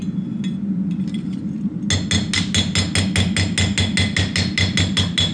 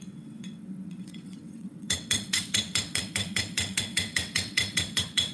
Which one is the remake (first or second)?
second